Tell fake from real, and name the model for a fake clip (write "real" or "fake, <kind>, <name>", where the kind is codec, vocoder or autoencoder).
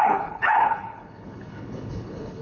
fake, codec, HILCodec